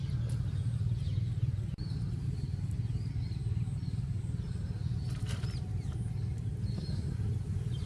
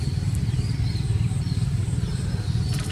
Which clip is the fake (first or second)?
second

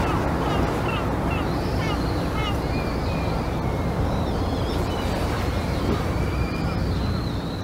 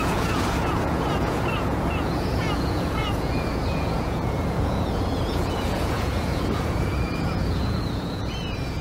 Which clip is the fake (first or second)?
second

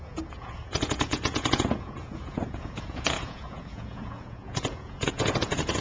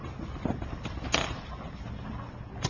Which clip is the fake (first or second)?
first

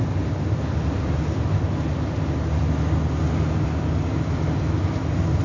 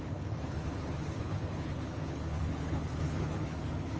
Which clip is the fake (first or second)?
second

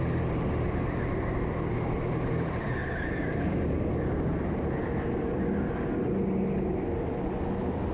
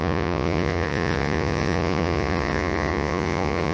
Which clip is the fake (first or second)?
second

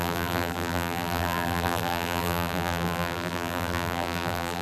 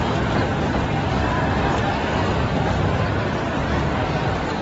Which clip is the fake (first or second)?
first